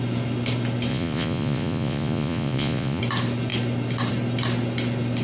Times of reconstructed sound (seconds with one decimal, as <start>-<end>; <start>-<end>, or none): 0.9-3.0